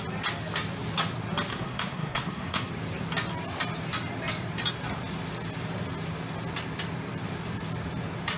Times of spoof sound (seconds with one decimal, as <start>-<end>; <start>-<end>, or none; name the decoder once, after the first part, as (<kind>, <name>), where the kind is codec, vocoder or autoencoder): 1.5-2.7 (codec, SNAC)